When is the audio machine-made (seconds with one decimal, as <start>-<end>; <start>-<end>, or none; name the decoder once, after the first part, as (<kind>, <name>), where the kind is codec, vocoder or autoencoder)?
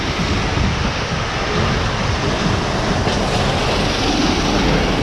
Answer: 0.7-1.3 (autoencoder, DAC-VAE)